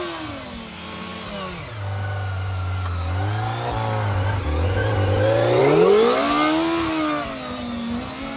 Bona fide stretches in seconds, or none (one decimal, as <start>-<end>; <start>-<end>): 0.0-8.4